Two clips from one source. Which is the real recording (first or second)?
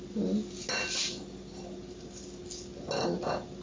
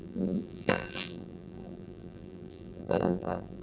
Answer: first